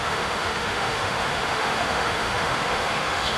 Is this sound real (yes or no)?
no